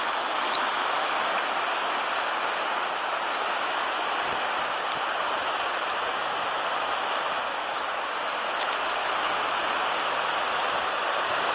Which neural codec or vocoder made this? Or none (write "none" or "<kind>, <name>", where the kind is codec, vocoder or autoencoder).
none